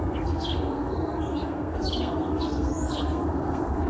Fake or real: fake